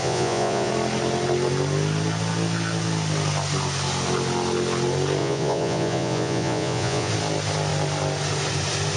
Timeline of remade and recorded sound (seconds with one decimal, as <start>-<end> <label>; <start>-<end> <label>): 0.0-0.7 remade; 0.7-5.2 recorded; 5.2-7.1 remade; 7.1-9.0 recorded